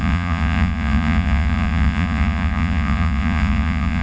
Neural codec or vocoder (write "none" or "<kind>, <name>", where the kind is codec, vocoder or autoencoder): vocoder, Vocos